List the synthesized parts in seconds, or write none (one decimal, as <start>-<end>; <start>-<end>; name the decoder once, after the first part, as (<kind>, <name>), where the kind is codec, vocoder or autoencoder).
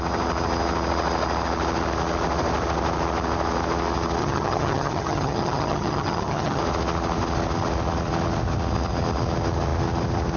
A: 4.2-6.6 (vocoder, HiFi-GAN)